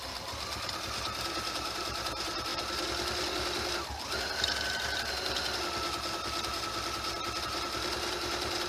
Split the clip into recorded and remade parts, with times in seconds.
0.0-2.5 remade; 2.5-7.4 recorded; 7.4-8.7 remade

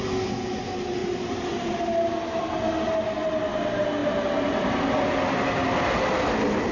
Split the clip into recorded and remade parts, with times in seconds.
0.0-1.0 recorded; 1.0-2.6 remade; 2.6-6.7 recorded

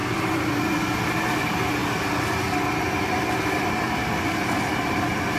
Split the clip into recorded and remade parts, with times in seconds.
0.0-5.4 recorded

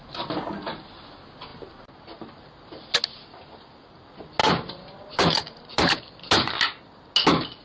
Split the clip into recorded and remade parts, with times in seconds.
0.0-4.4 recorded; 4.4-6.0 remade; 6.0-7.6 recorded

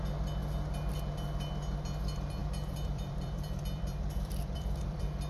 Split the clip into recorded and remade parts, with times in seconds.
0.0-2.4 recorded; 2.4-5.3 remade

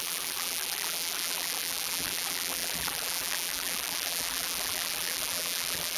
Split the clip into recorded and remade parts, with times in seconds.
0.0-6.0 remade